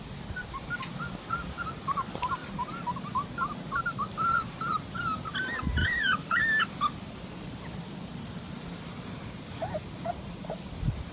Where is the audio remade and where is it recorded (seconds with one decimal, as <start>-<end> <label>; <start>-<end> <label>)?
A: 0.0-5.8 recorded; 5.8-6.4 remade; 6.4-11.1 recorded